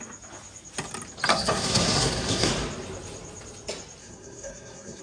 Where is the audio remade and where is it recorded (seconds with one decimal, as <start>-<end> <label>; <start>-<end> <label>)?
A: 0.0-1.3 recorded; 1.3-2.5 remade; 2.5-4.0 recorded; 4.0-5.0 remade